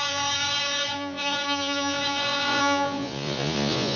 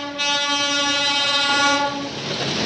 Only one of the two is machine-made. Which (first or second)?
first